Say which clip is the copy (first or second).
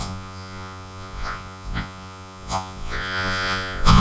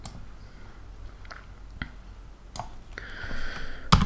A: first